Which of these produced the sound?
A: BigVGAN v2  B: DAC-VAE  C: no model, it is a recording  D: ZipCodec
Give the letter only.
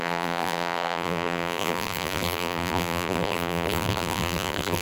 A